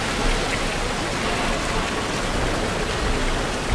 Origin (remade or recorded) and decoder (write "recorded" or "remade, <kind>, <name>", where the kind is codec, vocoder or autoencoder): recorded